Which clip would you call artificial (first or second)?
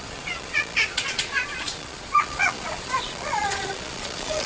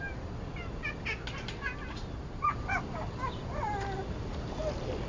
first